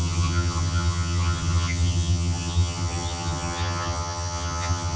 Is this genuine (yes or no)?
no